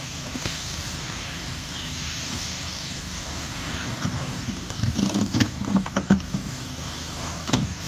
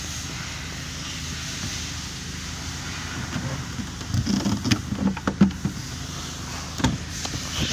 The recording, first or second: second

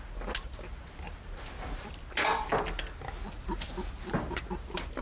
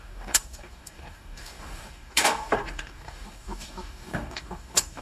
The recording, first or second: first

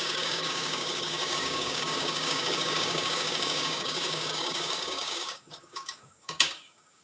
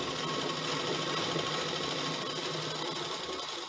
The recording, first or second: second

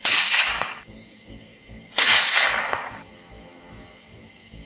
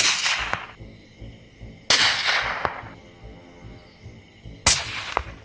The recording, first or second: second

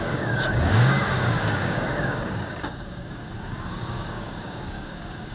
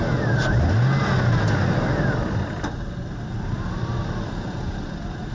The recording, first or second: second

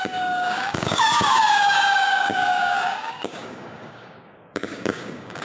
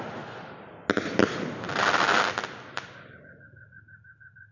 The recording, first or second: second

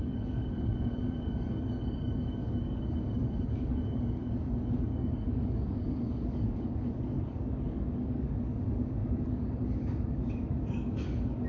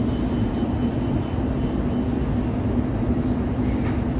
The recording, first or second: second